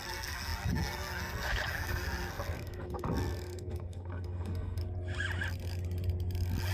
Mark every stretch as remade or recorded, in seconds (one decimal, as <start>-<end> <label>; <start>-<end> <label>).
0.0-4.8 remade; 4.8-6.7 recorded